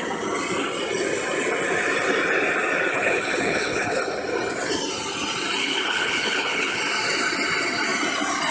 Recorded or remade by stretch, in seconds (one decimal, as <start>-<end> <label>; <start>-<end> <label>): 0.0-2.9 recorded; 2.9-4.0 remade; 4.0-5.6 recorded; 5.6-6.8 remade; 6.8-8.5 recorded

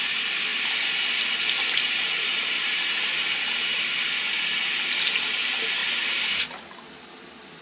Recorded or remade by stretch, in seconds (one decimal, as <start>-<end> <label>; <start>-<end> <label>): 0.0-7.6 recorded

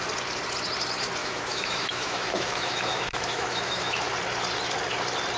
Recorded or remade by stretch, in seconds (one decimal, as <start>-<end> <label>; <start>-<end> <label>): 0.0-1.2 recorded; 1.2-4.0 remade; 4.0-5.4 recorded

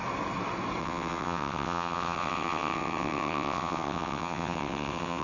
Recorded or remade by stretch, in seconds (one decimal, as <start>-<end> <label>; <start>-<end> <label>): 0.0-0.8 recorded; 0.8-5.2 remade

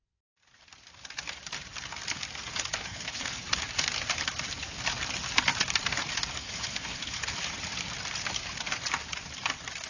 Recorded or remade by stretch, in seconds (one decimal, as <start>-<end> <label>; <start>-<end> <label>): 0.0-2.9 recorded; 2.9-3.4 remade; 3.4-6.4 recorded; 6.4-7.2 remade; 7.2-9.9 recorded

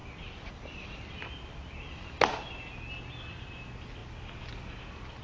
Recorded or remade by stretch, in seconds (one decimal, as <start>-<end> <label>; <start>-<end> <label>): 0.0-1.5 remade; 1.5-4.0 recorded; 4.0-4.8 remade; 4.8-5.2 recorded

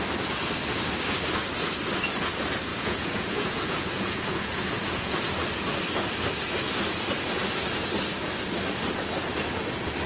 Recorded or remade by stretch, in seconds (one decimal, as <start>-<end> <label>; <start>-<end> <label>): 0.0-2.7 recorded; 2.7-5.2 remade; 5.2-10.1 recorded

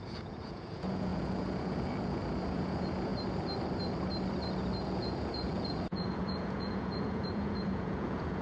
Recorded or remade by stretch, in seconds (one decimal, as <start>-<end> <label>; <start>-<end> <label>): 0.0-3.1 remade; 3.1-4.8 recorded; 4.8-8.4 remade